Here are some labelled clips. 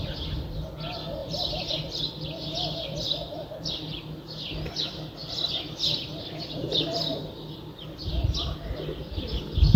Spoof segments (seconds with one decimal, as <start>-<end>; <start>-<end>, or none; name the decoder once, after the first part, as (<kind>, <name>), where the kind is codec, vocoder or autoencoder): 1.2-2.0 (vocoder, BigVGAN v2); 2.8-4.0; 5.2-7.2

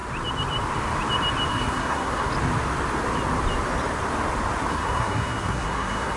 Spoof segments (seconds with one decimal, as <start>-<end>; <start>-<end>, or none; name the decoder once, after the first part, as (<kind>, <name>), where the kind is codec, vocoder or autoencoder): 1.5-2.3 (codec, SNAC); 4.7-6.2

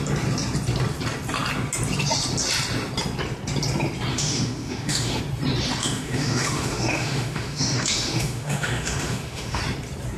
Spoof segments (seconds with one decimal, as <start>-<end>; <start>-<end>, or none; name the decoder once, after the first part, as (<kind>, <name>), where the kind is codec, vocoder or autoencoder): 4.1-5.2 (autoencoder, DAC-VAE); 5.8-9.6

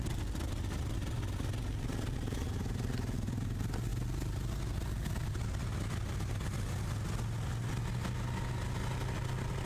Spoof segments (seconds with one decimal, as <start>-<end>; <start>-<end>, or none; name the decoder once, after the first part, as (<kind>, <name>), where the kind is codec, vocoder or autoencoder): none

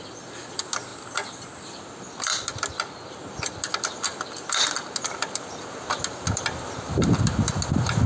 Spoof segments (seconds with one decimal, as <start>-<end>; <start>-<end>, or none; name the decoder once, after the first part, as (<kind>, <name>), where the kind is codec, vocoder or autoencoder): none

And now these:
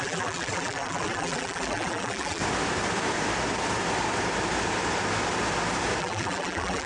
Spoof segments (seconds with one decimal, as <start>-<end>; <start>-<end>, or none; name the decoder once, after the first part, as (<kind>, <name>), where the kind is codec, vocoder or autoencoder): 0.0-2.4 (vocoder, BigVGAN v2); 6.0-6.9

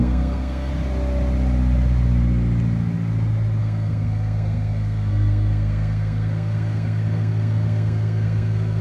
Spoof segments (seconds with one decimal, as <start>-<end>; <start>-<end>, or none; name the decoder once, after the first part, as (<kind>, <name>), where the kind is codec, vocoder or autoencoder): 0.0-0.7 (codec, SNAC); 3.6-8.8

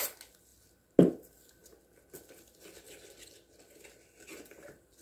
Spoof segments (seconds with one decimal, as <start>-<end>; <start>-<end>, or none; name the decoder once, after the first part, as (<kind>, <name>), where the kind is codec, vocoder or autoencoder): none